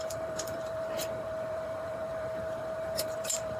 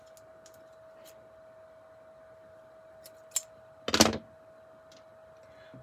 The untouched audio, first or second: second